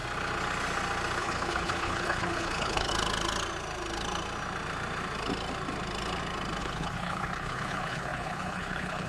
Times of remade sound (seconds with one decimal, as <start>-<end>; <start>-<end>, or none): 1.2-2.9; 6.6-9.1